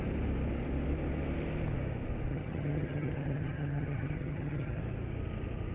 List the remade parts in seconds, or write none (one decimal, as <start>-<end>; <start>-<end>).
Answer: 2.3-4.8